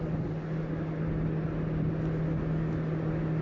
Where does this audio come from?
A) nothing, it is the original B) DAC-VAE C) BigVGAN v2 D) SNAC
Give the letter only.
A